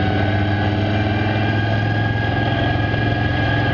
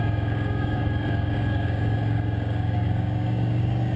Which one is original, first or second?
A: first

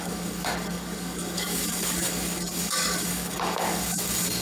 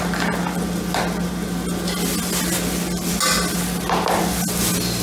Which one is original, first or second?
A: second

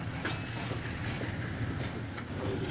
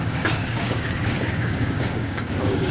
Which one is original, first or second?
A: first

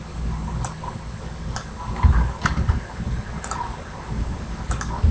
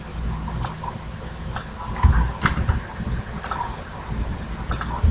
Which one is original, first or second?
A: second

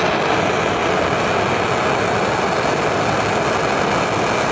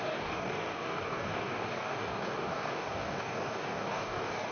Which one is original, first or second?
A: first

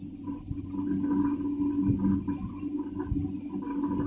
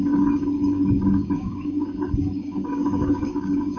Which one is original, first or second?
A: first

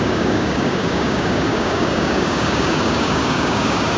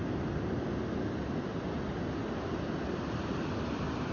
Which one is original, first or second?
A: second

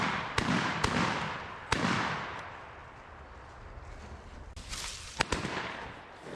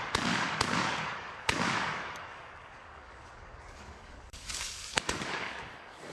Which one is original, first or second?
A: first